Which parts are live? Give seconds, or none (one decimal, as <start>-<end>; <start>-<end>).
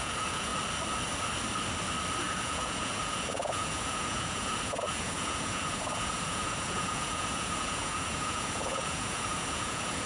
0.5-2.2